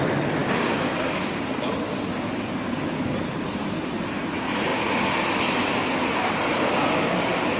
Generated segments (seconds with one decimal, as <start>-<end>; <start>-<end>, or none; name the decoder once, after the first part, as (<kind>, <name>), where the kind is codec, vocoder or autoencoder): 0.4-1.7 (codec, DAC)